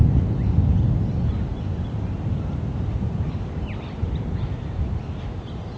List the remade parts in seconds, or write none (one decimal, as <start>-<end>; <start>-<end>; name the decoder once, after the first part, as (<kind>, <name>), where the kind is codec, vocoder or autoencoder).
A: none